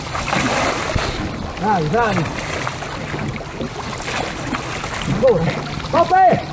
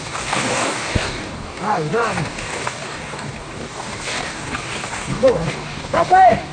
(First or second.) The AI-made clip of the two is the second